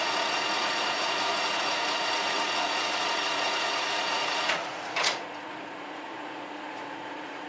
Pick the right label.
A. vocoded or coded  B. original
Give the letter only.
A